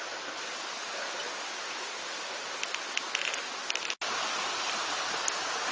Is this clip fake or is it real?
real